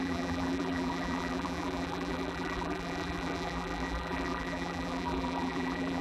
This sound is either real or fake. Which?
fake